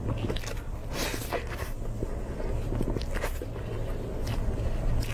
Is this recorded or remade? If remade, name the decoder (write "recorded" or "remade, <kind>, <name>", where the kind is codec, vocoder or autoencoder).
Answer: recorded